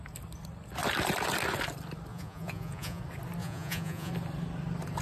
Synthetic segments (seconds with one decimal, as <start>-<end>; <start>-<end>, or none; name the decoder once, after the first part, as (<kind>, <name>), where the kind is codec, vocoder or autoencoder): 2.1-3.0 (vocoder, Vocos); 3.4-4.1